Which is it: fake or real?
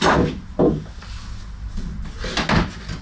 real